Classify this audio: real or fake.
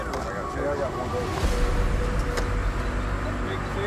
real